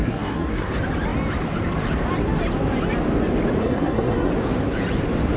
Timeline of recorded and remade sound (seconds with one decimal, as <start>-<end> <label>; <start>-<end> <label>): 0.0-0.7 remade; 0.7-3.6 recorded; 3.6-4.3 remade; 4.3-5.4 recorded